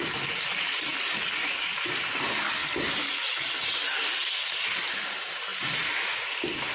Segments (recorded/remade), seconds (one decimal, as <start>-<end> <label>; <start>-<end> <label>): 0.0-0.9 remade; 0.9-1.6 recorded; 1.6-2.6 remade; 2.6-3.6 recorded; 3.6-4.2 remade; 4.2-4.8 recorded; 4.8-6.7 remade